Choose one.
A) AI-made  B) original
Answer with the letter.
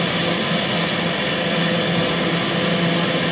B